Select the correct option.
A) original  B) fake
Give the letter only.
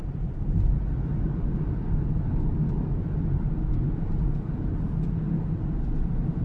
A